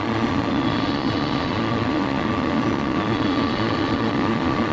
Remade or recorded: remade